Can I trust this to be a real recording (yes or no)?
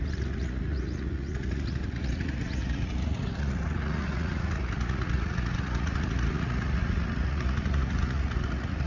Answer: no